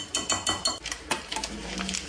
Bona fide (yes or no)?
yes